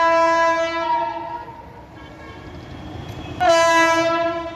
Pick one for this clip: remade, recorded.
remade